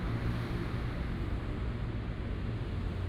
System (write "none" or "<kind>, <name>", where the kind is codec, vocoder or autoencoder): none